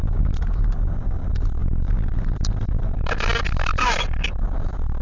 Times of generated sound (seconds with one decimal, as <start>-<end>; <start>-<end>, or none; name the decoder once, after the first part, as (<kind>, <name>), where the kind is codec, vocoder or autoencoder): none